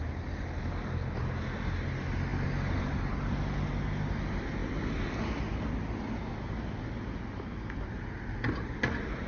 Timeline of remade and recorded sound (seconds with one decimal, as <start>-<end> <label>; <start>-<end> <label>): 0.0-9.3 recorded